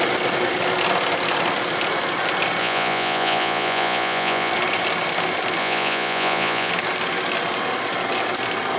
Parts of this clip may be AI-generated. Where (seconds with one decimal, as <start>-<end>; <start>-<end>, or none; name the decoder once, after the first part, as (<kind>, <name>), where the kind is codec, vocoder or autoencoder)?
2.6-4.5 (vocoder, Vocos); 5.6-6.7